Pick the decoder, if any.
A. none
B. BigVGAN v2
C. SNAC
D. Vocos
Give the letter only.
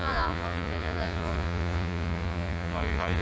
D